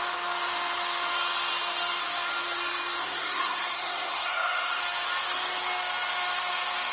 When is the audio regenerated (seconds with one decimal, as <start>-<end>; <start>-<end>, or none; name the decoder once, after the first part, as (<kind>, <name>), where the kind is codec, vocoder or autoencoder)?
3.0-4.8 (codec, SNAC)